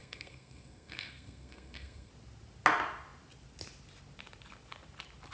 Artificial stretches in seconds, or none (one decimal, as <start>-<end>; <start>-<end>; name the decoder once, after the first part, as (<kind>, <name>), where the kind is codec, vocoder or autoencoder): 0.0-2.1 (codec, SNAC)